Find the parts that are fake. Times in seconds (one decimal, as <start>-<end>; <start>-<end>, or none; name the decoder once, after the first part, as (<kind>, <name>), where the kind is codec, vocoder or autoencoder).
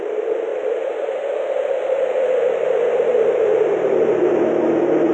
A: none